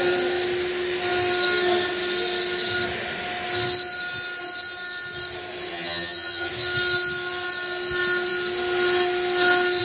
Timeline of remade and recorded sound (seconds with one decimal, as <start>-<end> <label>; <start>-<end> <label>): 0.0-5.7 recorded; 5.7-6.5 remade; 6.5-9.8 recorded

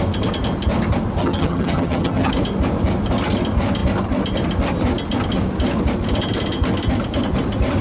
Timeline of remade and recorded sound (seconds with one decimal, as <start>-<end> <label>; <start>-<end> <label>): 0.0-1.2 recorded; 1.2-2.3 remade; 2.3-7.8 recorded

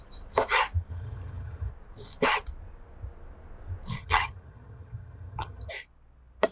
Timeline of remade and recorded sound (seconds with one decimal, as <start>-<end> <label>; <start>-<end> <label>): 0.0-0.9 recorded; 0.9-1.7 remade; 1.7-4.0 recorded; 4.0-5.7 remade; 5.7-6.5 recorded

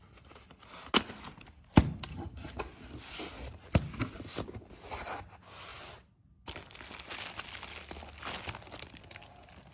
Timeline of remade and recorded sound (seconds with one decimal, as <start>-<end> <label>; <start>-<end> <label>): 0.0-2.1 recorded; 2.1-2.6 remade; 2.6-9.7 recorded

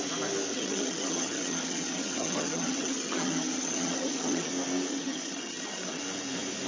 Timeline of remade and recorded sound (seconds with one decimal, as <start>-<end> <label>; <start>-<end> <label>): 0.0-0.5 recorded; 0.5-4.5 remade; 4.5-4.9 recorded; 4.9-6.0 remade; 6.0-6.7 recorded

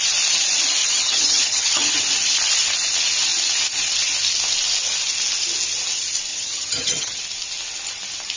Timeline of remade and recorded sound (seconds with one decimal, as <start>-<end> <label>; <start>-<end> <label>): 0.0-0.8 recorded; 0.8-2.0 remade; 2.0-6.3 recorded; 6.3-7.2 remade; 7.2-8.4 recorded